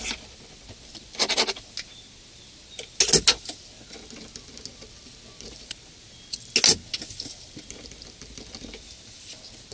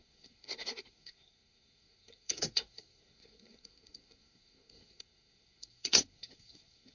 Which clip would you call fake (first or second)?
second